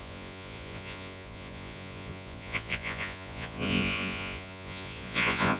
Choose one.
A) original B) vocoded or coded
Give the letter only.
B